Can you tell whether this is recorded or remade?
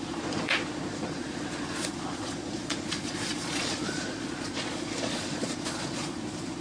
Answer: remade